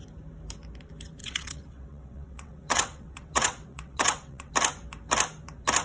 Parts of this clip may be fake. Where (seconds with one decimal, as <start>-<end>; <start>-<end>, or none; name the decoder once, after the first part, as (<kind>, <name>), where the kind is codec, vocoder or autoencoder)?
1.2-4.5 (vocoder, WaveNeXt)

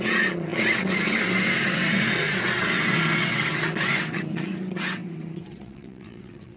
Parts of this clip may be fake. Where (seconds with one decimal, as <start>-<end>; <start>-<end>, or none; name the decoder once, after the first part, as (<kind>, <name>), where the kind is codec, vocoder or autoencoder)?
0.0-6.6 (vocoder, WaveNeXt)

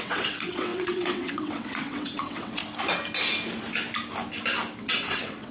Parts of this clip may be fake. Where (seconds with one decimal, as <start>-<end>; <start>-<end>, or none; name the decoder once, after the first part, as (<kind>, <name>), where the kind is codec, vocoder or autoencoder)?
0.0-2.6 (vocoder, WaveNeXt); 4.8-5.5

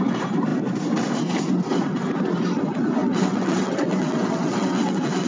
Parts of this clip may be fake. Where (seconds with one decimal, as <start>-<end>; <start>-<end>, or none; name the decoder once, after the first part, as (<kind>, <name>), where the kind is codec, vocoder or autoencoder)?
3.0-5.3 (vocoder, WaveNeXt)